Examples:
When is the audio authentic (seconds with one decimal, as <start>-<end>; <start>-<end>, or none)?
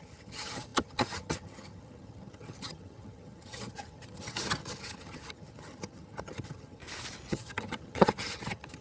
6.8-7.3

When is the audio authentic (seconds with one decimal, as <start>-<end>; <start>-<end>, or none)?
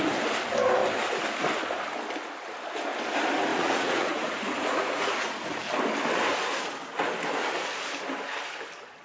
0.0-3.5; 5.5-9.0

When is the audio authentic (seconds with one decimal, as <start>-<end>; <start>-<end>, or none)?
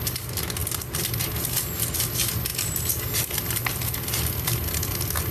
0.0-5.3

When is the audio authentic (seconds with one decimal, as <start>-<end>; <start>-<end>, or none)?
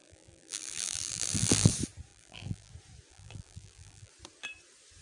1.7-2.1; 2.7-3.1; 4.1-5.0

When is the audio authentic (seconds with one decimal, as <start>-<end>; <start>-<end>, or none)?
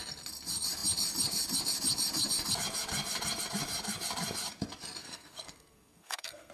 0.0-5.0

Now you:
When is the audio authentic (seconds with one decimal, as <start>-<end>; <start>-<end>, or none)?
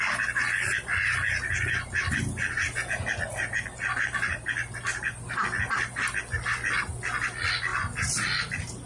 0.0-8.9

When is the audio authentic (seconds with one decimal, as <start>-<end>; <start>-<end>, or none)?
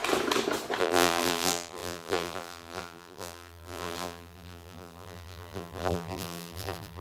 0.0-0.8